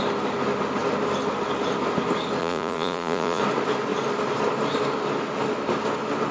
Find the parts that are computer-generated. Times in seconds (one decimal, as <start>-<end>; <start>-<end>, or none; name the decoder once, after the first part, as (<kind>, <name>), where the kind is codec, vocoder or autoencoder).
2.4-3.4 (vocoder, Vocos)